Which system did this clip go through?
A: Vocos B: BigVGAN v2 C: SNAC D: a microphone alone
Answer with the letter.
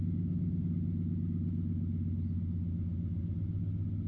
D